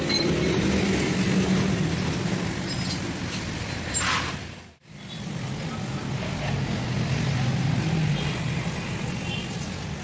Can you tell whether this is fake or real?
real